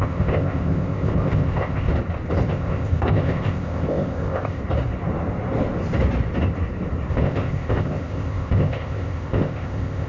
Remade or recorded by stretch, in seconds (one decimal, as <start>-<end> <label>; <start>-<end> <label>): 0.0-1.9 remade; 1.9-2.5 recorded; 2.5-4.6 remade; 4.6-7.1 recorded; 7.1-10.1 remade